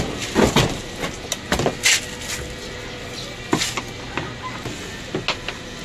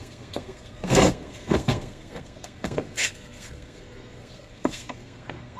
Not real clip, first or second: second